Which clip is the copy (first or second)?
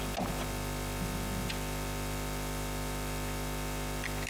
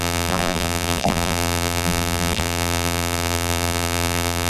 second